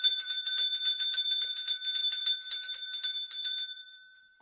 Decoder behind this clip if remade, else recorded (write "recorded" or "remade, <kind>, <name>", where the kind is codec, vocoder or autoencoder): remade, vocoder, BigVGAN v2